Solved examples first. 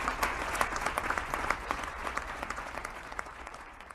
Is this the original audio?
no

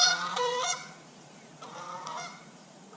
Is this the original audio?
no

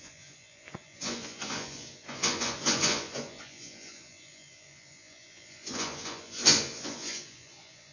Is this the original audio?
no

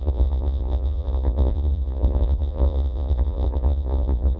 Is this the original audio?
no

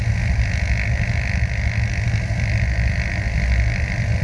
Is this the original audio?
yes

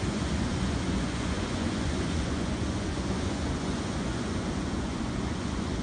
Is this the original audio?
no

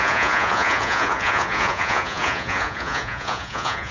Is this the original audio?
no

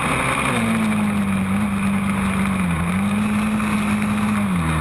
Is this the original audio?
yes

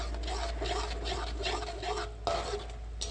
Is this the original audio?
yes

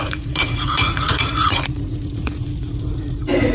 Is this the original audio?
no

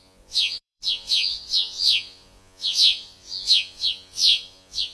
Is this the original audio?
no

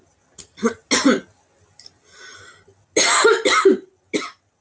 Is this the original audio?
yes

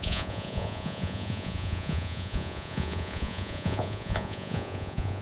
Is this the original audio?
no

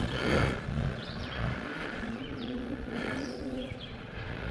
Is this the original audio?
no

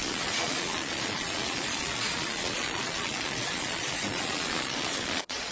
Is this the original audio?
no